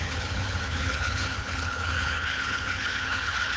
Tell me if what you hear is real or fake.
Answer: fake